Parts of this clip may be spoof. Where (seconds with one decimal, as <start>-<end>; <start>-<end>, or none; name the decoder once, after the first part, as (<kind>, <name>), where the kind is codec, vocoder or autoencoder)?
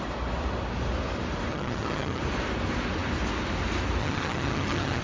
1.5-2.2 (vocoder, HiFi-GAN); 4.0-5.0